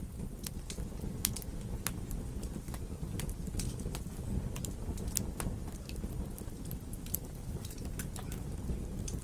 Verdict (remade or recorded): recorded